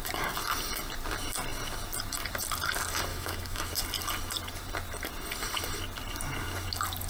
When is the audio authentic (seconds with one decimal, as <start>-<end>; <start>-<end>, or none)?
0.0-3.1; 3.7-7.1

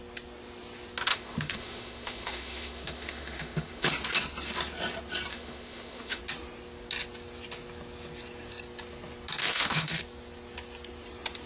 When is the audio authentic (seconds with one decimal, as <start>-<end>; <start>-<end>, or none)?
0.0-1.1; 3.9-5.3; 6.2-9.4; 10.0-11.5

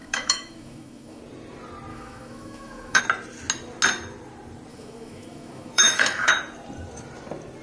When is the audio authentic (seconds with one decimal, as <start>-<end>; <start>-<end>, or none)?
1.2-1.9; 3.0-4.7; 6.3-7.6

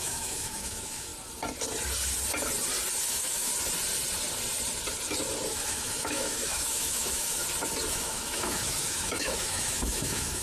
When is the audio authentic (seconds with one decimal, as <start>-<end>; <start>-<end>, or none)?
1.1-3.1; 3.5-5.6; 7.4-7.9

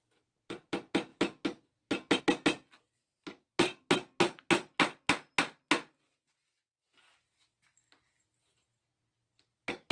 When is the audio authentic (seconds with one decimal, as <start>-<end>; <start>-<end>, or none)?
0.0-9.9

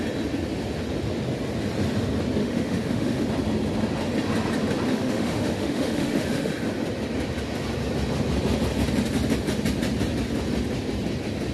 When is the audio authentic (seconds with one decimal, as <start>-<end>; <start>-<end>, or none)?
0.0-2.4; 3.2-4.9; 6.5-11.5